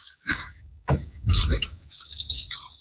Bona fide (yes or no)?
no